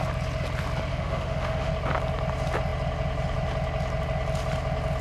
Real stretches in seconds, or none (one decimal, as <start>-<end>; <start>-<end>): 0.0-0.9; 1.7-5.0